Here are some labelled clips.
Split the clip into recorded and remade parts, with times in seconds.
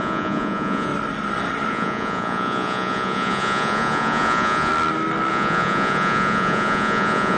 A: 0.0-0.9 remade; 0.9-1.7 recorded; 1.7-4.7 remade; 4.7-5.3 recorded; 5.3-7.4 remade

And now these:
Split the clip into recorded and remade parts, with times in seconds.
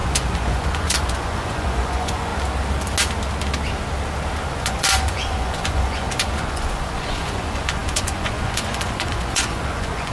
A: 0.0-2.3 remade; 2.3-4.5 recorded; 4.5-10.1 remade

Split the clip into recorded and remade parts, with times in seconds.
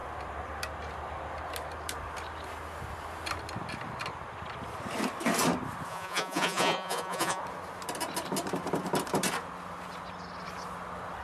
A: 0.0-5.9 recorded; 5.9-7.4 remade; 7.4-11.2 recorded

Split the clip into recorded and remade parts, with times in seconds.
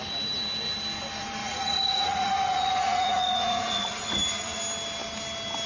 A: 0.0-1.4 recorded; 1.4-4.6 remade; 4.6-5.7 recorded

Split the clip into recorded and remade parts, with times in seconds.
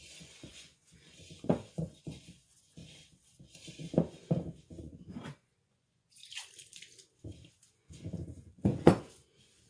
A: 0.0-2.8 remade; 2.8-4.8 recorded; 4.8-6.2 remade; 6.2-7.5 recorded; 7.5-9.7 remade